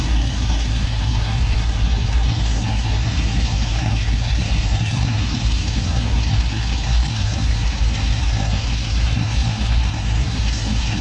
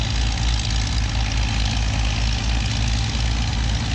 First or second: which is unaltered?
second